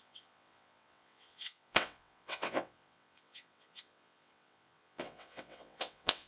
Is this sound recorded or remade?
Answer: remade